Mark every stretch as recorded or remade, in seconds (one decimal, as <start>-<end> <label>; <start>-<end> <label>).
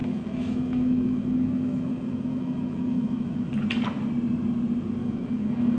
0.0-3.5 remade; 3.5-5.0 recorded; 5.0-5.8 remade